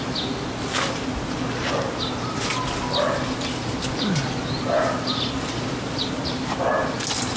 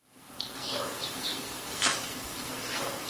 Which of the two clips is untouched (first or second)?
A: first